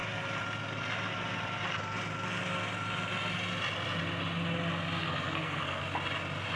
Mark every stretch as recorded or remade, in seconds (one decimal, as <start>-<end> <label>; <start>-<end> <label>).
0.0-5.0 recorded; 5.0-5.8 remade; 5.8-6.6 recorded